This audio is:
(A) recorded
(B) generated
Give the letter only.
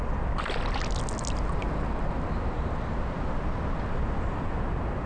A